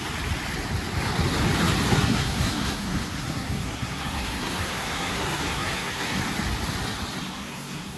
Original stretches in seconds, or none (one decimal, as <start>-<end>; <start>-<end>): 0.0-1.9; 6.2-7.3